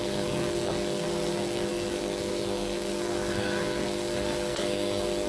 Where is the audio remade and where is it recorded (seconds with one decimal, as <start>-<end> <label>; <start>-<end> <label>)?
0.0-5.3 remade